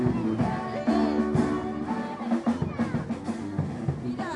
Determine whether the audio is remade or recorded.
recorded